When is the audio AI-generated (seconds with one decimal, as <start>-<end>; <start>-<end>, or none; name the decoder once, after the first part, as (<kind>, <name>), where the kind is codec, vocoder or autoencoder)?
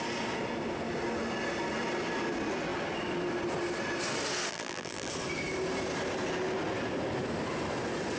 4.5-5.1 (vocoder, BigVGAN v2)